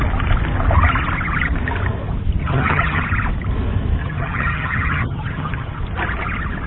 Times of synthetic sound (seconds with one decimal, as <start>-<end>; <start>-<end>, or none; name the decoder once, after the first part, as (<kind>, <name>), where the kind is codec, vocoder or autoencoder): 2.4-3.0 (vocoder, HiFi-GAN); 4.0-5.8